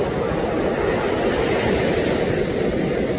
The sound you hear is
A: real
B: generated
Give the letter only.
A